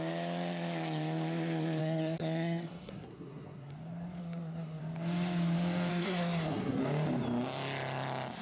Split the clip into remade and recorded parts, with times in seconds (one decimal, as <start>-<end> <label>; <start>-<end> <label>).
0.0-1.8 recorded; 1.8-3.7 remade; 3.7-4.2 recorded; 4.2-4.8 remade; 4.8-5.9 recorded; 5.9-6.8 remade; 6.8-8.4 recorded